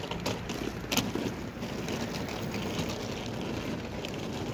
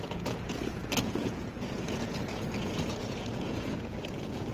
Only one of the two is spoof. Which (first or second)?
second